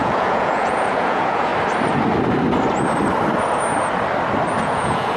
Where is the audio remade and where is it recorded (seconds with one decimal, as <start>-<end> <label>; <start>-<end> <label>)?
0.0-1.5 remade; 1.5-4.6 recorded; 4.6-5.2 remade